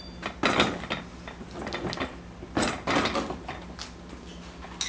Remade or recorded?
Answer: recorded